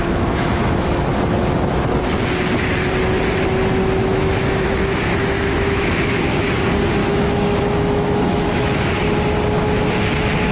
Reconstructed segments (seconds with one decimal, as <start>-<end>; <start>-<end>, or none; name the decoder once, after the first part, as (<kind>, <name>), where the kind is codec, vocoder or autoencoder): 0.0-1.1 (autoencoder, DAC-VAE); 4.1-6.2; 7.0-8.9